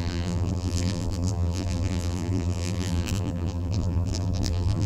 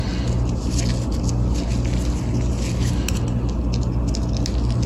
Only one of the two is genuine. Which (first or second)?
second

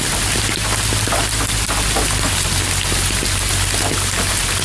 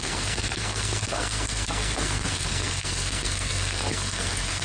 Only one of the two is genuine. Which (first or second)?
first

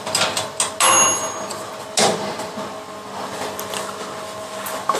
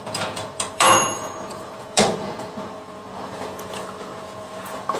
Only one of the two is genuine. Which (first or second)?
first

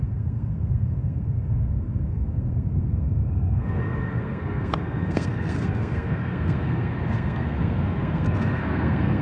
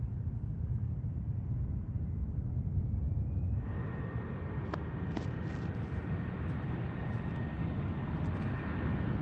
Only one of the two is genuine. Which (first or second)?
second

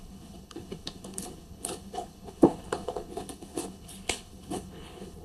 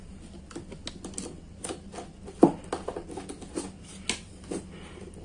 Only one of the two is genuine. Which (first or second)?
second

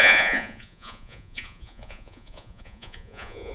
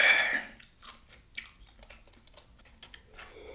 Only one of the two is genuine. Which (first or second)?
second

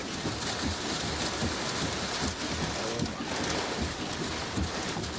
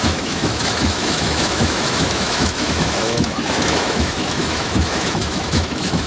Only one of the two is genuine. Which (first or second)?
first